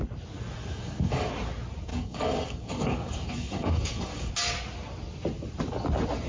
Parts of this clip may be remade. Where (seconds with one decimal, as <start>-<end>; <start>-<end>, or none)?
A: 0.6-1.3; 1.9-4.3